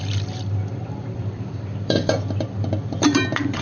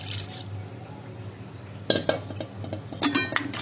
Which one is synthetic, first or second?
first